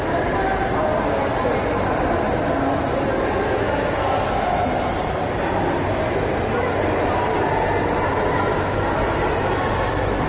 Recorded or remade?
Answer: recorded